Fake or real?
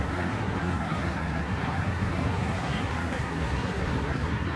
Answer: fake